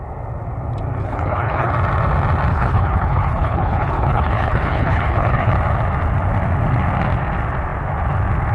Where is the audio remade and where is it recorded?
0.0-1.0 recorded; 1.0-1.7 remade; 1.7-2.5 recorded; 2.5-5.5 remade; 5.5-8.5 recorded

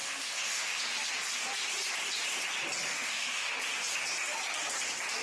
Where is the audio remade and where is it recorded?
0.0-0.8 remade; 0.8-2.9 recorded; 2.9-3.5 remade; 3.5-5.2 recorded

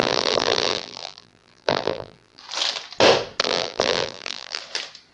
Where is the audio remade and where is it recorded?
0.0-2.4 remade; 2.4-3.4 recorded; 3.4-4.6 remade; 4.6-5.1 recorded

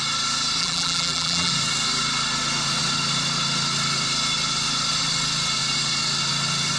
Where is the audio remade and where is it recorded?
0.0-0.6 recorded; 0.6-1.5 remade; 1.5-6.8 recorded